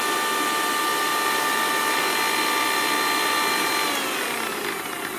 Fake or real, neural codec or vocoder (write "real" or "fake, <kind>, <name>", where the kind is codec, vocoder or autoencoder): real